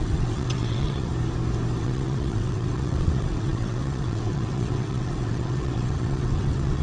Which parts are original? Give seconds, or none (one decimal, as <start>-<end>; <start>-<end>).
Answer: 1.1-1.8